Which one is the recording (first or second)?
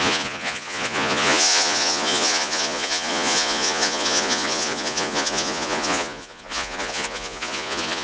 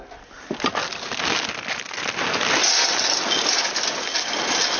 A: second